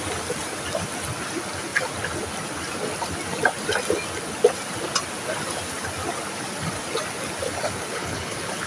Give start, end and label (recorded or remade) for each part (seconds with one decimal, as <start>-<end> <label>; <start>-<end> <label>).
0.0-7.9 recorded; 7.9-8.7 remade